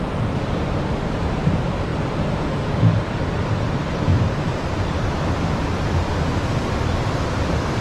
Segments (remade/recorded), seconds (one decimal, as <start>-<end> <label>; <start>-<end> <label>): 0.0-1.9 recorded; 1.9-2.7 remade; 2.7-4.1 recorded; 4.1-5.1 remade; 5.1-7.8 recorded